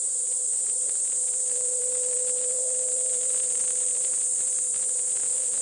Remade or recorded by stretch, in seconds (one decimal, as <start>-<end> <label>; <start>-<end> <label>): 0.0-5.6 remade